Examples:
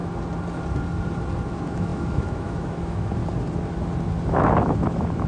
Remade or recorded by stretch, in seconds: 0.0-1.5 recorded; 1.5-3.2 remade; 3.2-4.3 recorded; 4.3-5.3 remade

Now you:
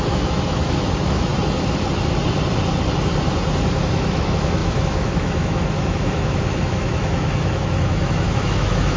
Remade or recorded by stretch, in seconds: 0.0-1.3 remade; 1.3-3.9 recorded; 3.9-9.0 remade

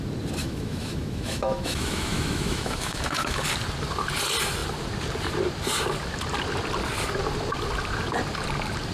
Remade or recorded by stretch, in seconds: 0.0-0.4 recorded; 0.4-3.4 remade; 3.4-8.9 recorded

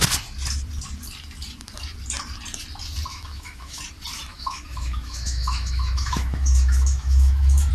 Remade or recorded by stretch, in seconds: 0.0-3.1 recorded; 3.1-3.8 remade; 3.8-4.3 recorded; 4.3-7.7 remade

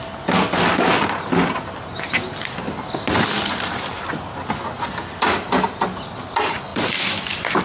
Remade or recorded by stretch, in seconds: 0.0-7.6 recorded

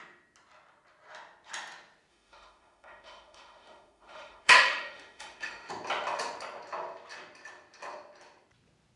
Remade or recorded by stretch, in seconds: 0.0-2.1 recorded; 2.1-5.7 remade; 5.7-9.0 recorded

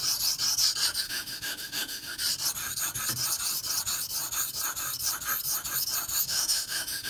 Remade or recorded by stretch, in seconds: 0.0-1.0 recorded; 1.0-2.2 remade; 2.2-6.2 recorded; 6.2-7.1 remade

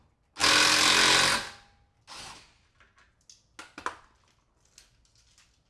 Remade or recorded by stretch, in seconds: 0.0-5.7 recorded